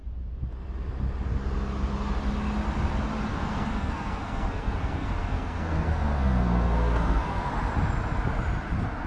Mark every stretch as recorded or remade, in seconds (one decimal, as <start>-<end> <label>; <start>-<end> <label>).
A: 0.0-3.3 recorded; 3.3-7.5 remade; 7.5-9.1 recorded